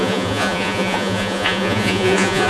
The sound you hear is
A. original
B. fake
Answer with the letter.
B